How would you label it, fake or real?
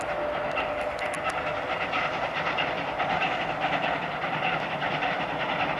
real